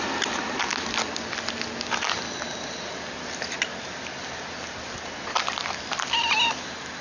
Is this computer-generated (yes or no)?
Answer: no